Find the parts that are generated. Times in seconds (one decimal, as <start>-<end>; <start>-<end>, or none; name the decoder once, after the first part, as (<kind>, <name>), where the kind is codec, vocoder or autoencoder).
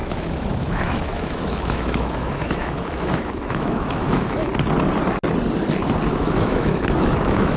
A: 0.0-4.5 (autoencoder, DAC-VAE); 6.2-7.6